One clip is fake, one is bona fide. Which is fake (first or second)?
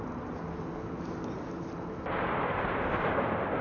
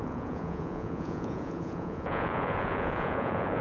second